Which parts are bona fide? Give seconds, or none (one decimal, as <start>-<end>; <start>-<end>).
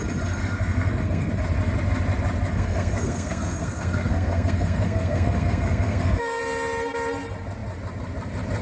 0.0-0.4; 1.3-2.5; 6.4-8.6